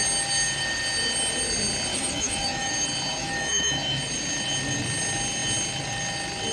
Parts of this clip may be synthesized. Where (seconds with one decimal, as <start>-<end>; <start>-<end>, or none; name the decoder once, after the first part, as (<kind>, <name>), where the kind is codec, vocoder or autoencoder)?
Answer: 1.9-2.7 (autoencoder, DAC-VAE); 3.2-4.0